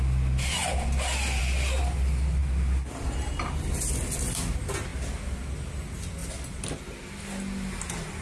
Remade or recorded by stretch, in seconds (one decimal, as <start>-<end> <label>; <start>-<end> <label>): 0.0-8.2 recorded